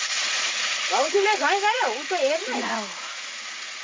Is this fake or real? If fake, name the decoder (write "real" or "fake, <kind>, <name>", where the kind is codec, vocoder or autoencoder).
fake, vocoder, Vocos